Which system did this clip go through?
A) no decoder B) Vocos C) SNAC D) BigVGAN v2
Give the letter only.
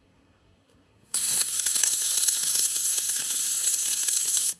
C